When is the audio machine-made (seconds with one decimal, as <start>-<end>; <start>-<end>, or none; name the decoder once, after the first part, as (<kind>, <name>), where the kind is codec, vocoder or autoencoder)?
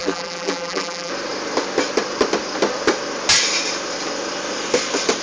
0.0-1.1 (vocoder, BigVGAN v2)